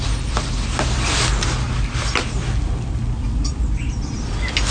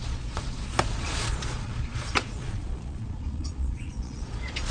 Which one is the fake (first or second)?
second